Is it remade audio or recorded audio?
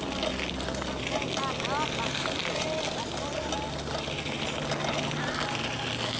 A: recorded